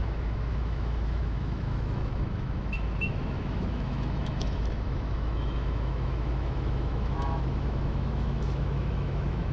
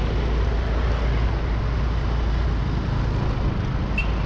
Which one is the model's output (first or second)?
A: first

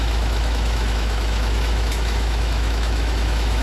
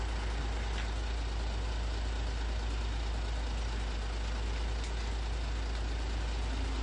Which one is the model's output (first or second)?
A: first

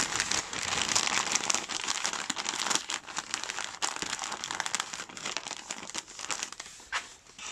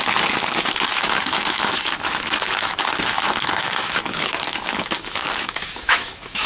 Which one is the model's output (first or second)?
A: second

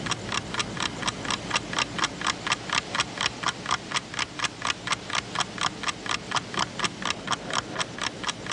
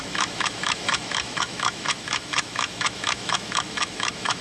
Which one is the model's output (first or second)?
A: second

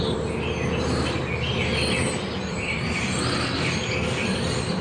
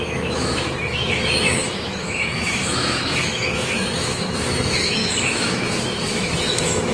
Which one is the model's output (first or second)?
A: second